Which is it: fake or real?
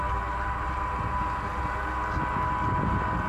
fake